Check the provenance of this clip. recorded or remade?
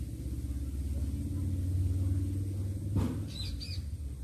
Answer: recorded